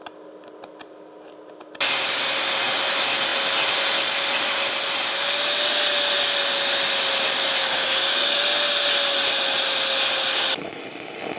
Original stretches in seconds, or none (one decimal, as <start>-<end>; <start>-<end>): 0.0-7.6; 8.4-11.4